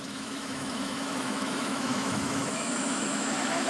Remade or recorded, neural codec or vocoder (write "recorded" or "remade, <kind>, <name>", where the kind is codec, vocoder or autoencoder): remade, autoencoder, DAC-VAE